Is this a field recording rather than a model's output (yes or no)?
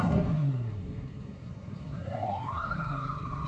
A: no